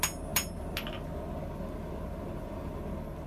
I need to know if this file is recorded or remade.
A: recorded